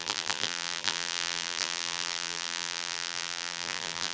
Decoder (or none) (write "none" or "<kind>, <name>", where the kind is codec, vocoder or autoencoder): vocoder, BigVGAN v2